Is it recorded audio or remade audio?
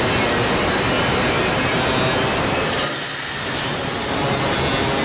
recorded